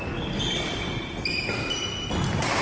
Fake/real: real